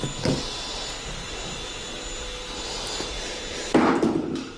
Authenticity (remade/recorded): recorded